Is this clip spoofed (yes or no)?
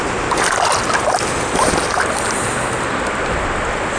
no